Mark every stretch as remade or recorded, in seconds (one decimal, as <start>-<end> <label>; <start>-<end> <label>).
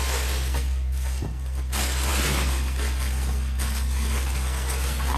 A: 0.0-5.2 remade